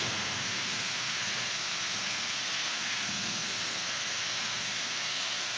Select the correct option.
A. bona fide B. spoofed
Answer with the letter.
B